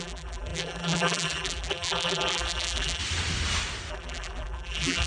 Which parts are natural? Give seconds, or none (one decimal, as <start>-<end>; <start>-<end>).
3.0-3.9